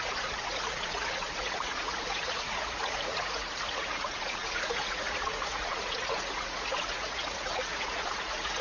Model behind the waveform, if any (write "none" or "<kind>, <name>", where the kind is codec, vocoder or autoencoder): vocoder, Vocos